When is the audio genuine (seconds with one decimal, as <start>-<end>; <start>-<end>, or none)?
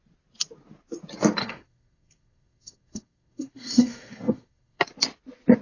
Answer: 0.0-1.4; 4.8-5.6